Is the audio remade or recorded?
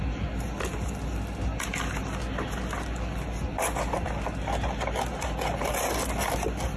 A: recorded